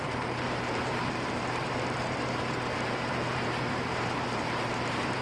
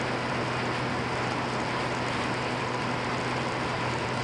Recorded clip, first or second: second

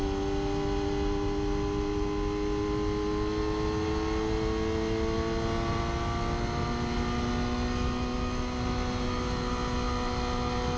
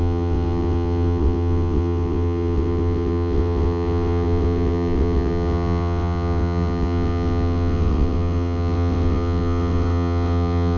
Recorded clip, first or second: first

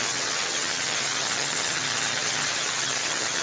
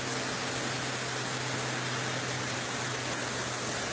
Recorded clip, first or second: second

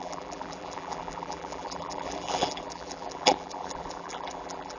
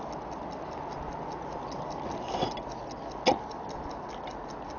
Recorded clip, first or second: second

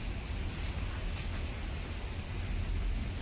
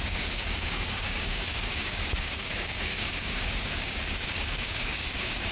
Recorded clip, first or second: first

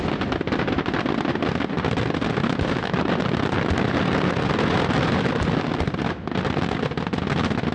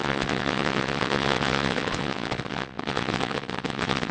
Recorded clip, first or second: first